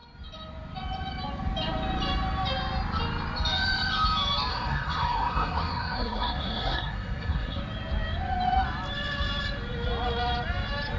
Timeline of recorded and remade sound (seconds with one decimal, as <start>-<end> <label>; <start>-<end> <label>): 0.0-4.5 recorded; 4.5-7.6 remade; 7.6-11.0 recorded